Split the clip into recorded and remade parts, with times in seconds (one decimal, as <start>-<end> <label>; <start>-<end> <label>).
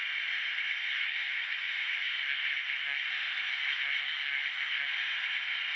0.0-0.8 recorded; 0.8-3.1 remade; 3.1-3.5 recorded; 3.5-4.9 remade; 4.9-5.8 recorded